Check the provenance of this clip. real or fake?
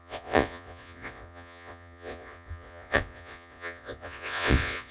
fake